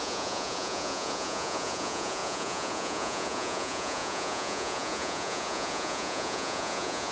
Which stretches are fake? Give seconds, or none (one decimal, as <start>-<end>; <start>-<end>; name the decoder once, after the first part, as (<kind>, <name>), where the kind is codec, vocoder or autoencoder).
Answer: 0.0-7.1 (vocoder, Vocos)